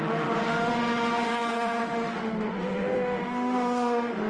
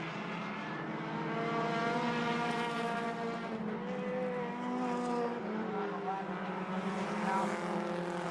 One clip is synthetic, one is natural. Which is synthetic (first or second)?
first